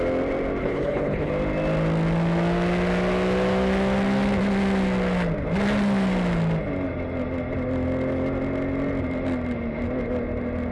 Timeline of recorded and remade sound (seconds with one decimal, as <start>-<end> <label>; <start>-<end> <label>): 0.0-0.6 recorded; 0.6-1.3 remade; 1.3-10.7 recorded